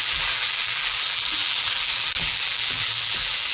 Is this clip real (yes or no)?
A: no